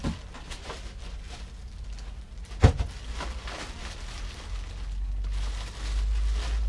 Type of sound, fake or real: real